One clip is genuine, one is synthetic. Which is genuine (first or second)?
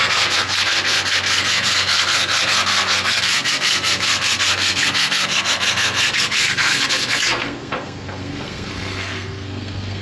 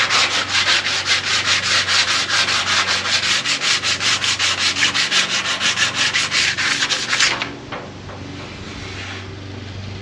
second